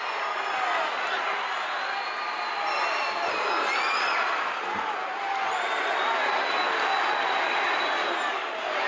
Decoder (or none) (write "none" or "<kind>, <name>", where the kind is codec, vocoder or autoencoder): none